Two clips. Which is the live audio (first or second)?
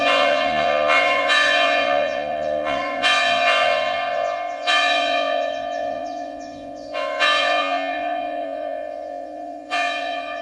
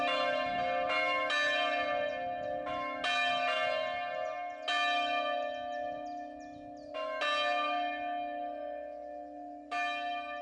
second